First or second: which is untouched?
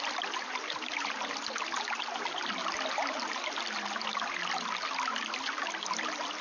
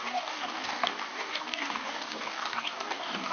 first